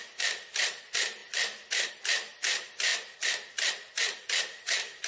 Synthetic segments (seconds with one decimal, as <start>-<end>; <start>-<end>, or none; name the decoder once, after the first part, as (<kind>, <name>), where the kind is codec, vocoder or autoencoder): 0.0-2.9 (vocoder, BigVGAN v2); 4.3-5.1